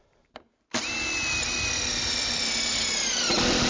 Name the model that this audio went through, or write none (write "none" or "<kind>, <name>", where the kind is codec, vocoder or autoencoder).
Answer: none